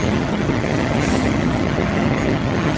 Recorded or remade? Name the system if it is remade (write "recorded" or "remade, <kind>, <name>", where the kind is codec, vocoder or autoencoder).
remade, vocoder, HiFi-GAN